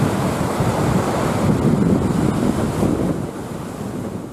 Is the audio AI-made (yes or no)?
no